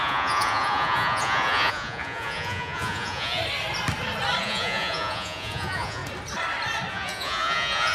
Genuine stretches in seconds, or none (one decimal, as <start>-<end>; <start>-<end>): 3.4-4.4; 6.0-6.9